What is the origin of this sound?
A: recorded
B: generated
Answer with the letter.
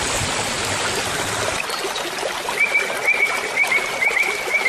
A